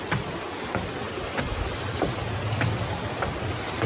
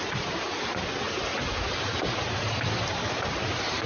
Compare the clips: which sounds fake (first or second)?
second